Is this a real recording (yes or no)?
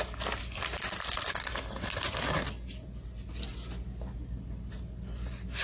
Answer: yes